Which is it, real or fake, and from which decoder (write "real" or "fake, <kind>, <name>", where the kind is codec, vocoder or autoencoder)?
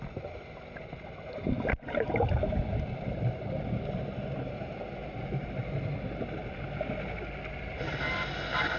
real